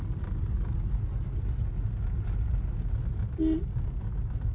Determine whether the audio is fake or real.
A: real